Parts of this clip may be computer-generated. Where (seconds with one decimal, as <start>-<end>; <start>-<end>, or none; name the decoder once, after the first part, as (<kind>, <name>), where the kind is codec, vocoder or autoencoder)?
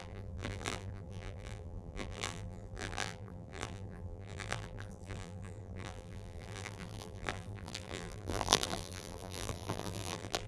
0.0-10.5 (vocoder, BigVGAN v2)